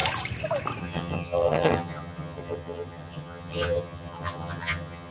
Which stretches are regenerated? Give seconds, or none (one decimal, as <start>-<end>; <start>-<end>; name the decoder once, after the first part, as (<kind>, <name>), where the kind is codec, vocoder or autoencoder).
0.8-5.1 (vocoder, HiFi-GAN)